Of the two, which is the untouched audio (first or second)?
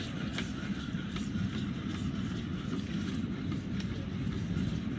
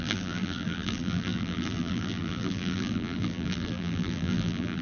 first